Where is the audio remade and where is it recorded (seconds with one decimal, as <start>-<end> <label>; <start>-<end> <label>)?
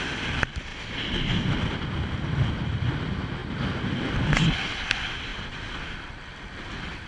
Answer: 0.0-7.1 recorded